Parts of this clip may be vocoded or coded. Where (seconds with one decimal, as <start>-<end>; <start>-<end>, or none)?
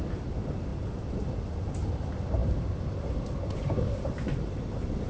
none